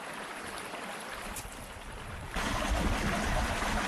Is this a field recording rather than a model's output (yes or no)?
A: yes